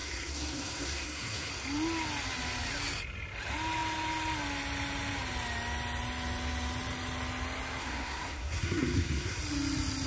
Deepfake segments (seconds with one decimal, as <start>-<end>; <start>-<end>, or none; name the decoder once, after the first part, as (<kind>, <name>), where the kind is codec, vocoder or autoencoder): 0.0-1.5 (codec, SNAC); 7.8-9.4